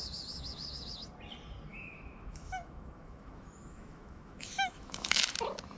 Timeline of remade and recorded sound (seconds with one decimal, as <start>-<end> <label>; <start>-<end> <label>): 0.0-1.7 recorded; 1.7-5.2 remade; 5.2-5.8 recorded